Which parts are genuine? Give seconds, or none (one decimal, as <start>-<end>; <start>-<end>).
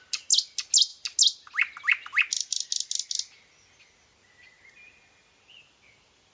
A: 0.0-6.3